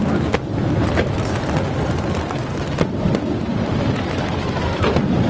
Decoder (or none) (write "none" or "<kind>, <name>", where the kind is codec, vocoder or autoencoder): none